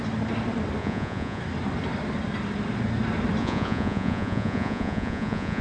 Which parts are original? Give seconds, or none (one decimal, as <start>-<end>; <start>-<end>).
0.0-0.8; 1.4-3.4